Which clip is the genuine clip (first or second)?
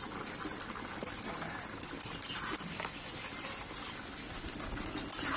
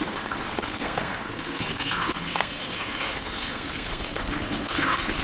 first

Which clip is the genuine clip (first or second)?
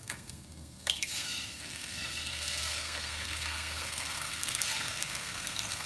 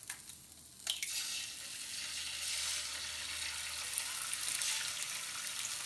second